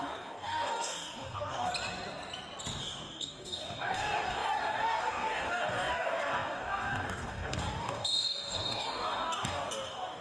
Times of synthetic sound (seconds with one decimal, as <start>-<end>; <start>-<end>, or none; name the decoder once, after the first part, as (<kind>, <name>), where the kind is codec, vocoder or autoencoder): 0.0-1.7 (codec, DAC); 2.8-10.2